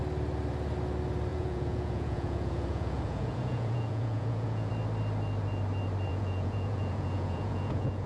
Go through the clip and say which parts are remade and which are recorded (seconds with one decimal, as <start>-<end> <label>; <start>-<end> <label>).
0.0-1.3 recorded; 1.3-4.7 remade; 4.7-6.1 recorded; 6.1-8.1 remade